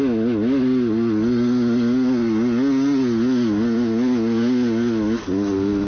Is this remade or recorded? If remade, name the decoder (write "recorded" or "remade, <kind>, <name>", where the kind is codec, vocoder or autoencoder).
recorded